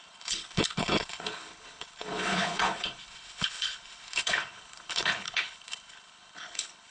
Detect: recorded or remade remade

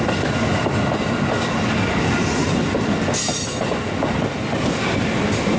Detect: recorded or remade recorded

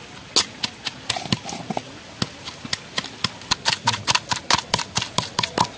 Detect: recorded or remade recorded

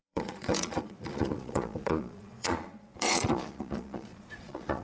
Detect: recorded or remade remade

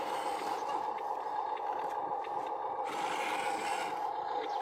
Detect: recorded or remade recorded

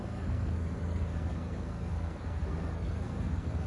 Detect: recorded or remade remade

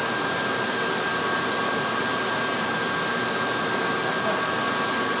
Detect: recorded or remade recorded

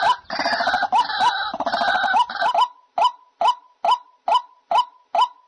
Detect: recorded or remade recorded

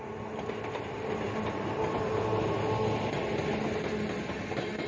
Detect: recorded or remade recorded